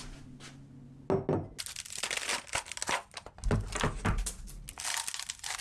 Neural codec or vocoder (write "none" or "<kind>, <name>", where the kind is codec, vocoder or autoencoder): none